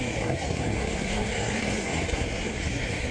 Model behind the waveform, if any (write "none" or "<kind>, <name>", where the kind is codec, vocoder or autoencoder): codec, SNAC